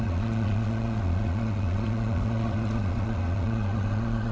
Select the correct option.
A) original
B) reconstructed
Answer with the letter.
B